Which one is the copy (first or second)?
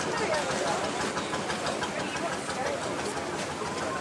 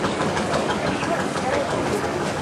second